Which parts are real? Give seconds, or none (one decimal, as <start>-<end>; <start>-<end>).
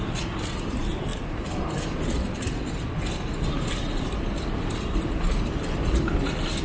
0.0-6.6